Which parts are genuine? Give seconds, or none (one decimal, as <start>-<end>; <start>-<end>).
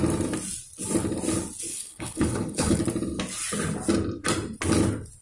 0.0-1.7; 2.8-5.2